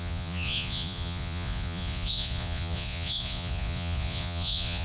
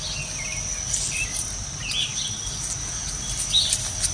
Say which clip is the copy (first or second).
first